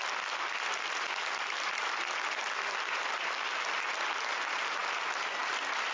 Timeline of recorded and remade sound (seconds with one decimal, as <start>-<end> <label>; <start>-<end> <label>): 0.0-5.9 recorded